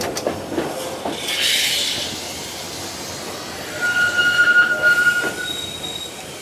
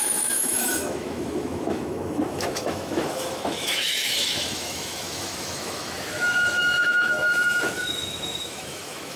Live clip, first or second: first